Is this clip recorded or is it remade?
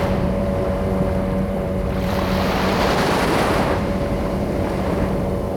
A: remade